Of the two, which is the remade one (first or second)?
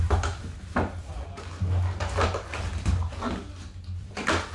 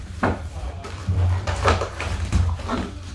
second